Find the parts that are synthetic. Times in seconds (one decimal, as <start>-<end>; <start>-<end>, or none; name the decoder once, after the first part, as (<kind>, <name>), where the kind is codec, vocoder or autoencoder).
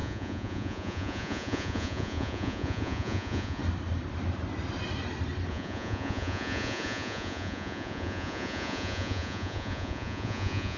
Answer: 0.0-3.6 (vocoder, Vocos); 5.5-10.8